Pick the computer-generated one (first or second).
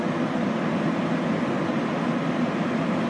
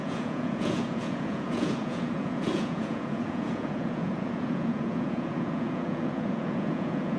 second